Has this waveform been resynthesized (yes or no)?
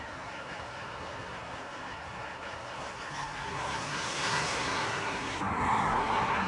yes